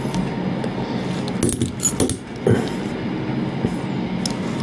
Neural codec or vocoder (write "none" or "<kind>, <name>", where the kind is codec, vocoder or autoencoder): none